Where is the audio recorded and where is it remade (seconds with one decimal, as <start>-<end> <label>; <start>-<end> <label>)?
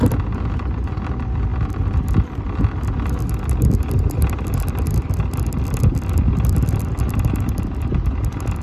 0.0-8.6 recorded